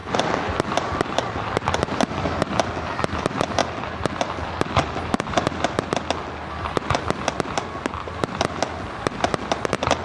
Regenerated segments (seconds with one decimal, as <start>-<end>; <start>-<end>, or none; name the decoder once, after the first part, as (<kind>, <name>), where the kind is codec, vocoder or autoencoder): none